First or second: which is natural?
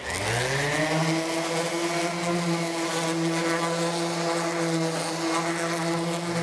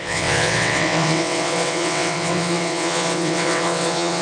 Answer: first